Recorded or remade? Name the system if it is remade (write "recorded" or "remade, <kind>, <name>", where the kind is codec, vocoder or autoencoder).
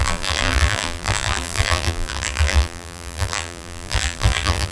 remade, vocoder, BigVGAN v2